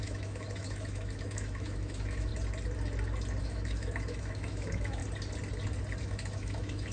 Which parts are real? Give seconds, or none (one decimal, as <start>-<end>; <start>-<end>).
2.3-3.4; 5.0-6.0